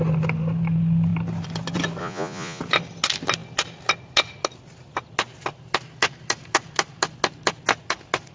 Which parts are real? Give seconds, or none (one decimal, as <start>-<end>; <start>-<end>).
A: 0.0-2.0; 2.6-8.3